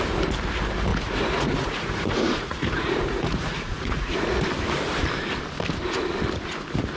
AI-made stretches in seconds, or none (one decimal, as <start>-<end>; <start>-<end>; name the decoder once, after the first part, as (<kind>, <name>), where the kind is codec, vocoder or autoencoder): 0.9-4.3 (vocoder, Vocos)